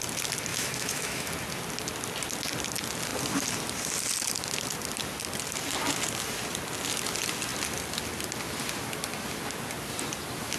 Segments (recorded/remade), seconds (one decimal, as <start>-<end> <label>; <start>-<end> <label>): 0.0-0.5 recorded; 0.5-1.3 remade; 1.3-10.6 recorded